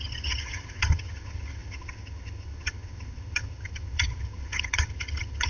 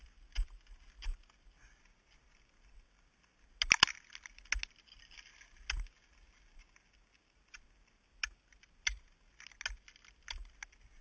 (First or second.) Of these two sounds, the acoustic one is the second